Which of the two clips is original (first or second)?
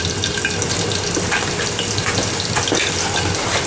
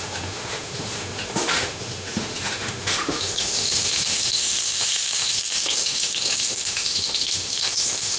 first